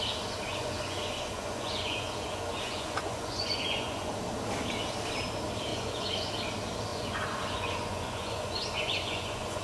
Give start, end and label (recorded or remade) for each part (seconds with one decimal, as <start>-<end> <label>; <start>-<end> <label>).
0.0-0.5 recorded; 0.5-4.1 remade; 4.1-5.7 recorded; 5.7-6.3 remade; 6.3-6.9 recorded; 6.9-9.6 remade